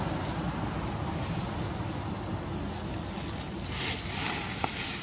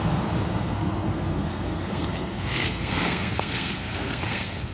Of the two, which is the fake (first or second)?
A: second